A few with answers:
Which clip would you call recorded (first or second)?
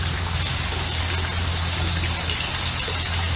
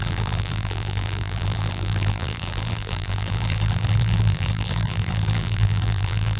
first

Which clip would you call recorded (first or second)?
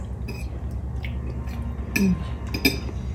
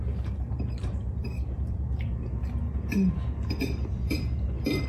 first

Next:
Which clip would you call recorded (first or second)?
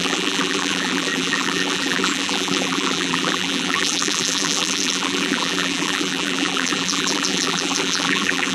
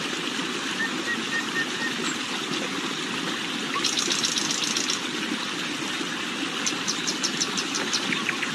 second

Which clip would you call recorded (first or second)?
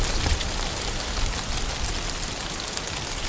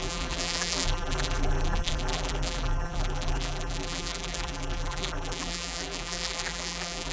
first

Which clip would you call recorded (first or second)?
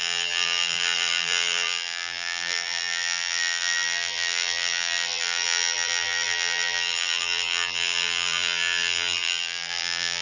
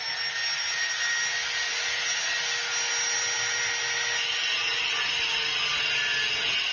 second